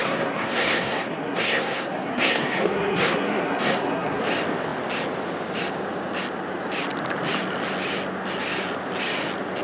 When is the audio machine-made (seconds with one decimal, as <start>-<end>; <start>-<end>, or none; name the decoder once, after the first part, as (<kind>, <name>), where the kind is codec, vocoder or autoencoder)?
0.0-4.2 (codec, SNAC)